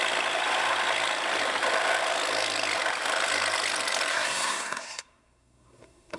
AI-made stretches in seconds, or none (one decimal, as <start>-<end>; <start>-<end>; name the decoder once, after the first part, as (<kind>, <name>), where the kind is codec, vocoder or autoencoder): 4.1-6.2 (codec, SNAC)